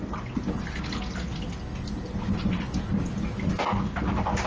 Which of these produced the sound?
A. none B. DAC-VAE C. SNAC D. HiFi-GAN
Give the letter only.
A